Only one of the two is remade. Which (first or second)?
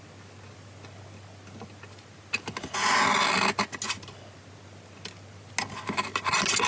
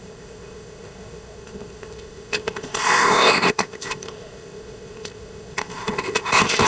second